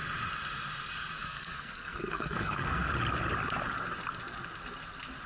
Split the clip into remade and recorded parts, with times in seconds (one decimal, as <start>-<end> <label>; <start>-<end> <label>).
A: 0.0-1.2 recorded; 1.2-2.9 remade; 2.9-5.3 recorded